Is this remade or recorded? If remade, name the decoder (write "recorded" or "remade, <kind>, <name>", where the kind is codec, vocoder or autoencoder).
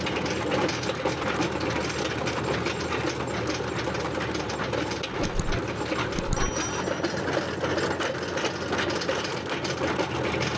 recorded